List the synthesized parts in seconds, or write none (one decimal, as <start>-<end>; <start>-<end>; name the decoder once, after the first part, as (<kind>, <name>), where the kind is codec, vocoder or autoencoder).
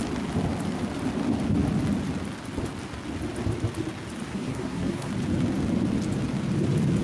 4.3-5.1 (codec, SNAC)